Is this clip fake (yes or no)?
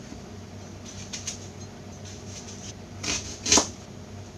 no